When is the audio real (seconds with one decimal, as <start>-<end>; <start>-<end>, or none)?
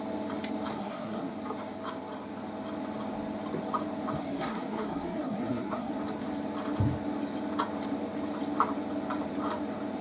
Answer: 0.0-0.7; 1.3-4.2; 5.9-10.0